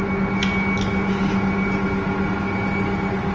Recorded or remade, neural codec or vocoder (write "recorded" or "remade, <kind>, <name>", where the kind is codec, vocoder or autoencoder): recorded